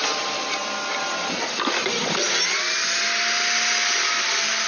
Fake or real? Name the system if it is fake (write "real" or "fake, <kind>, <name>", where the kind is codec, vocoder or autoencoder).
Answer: real